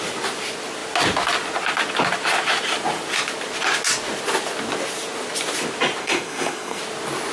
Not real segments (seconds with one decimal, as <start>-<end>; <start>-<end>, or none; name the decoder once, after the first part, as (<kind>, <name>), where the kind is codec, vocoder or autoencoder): 6.0-6.8 (codec, SNAC)